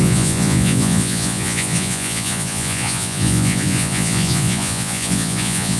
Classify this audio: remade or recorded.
remade